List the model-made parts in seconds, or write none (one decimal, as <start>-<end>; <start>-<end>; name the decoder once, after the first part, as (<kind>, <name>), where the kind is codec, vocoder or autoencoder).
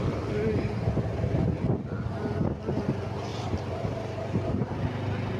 3.3-4.6 (vocoder, BigVGAN v2)